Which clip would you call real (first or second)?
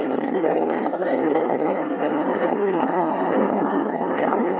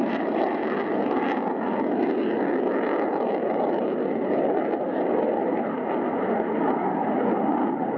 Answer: second